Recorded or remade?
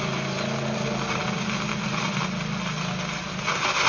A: recorded